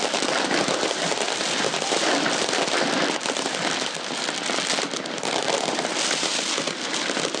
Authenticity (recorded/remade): remade